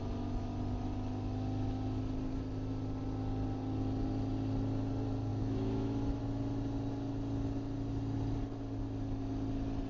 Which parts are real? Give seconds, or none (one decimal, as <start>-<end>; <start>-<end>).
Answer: 0.0-5.3; 6.2-9.9